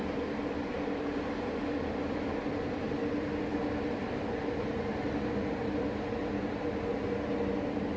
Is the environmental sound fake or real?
real